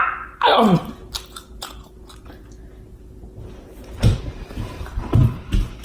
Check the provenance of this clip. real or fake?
real